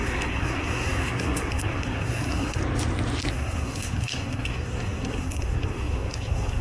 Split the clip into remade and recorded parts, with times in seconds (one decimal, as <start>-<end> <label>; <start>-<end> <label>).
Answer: 0.0-2.6 remade; 2.6-3.3 recorded; 3.3-6.6 remade